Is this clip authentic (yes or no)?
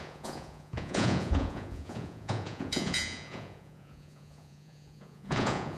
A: no